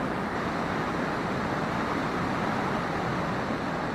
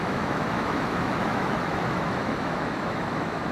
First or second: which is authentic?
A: first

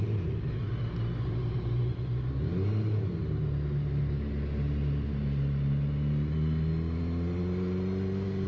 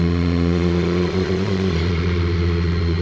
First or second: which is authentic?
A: first